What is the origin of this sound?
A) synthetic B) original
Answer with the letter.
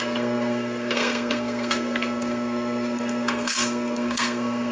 A